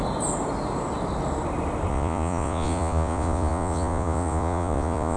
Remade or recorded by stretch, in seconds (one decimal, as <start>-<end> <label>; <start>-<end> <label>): 0.0-1.9 recorded; 1.9-5.2 remade